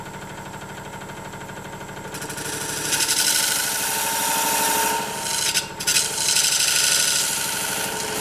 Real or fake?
real